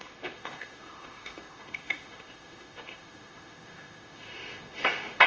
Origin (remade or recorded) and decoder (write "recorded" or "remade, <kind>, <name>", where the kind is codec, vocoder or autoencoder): remade, autoencoder, DAC-VAE